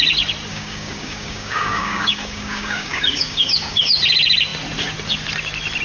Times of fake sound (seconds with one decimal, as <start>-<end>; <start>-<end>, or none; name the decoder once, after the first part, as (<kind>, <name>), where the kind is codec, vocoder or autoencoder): 0.5-4.0 (codec, DAC)